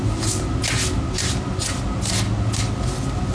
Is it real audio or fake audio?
real